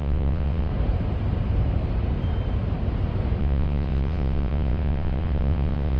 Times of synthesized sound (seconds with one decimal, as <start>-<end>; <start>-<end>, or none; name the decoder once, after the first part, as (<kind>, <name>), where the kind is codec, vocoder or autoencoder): 0.0-0.7 (vocoder, WaveNeXt); 3.4-6.0